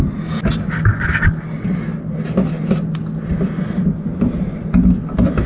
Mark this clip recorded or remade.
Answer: recorded